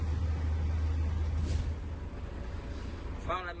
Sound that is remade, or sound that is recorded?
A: recorded